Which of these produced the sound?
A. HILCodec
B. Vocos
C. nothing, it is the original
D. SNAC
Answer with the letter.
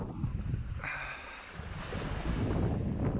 C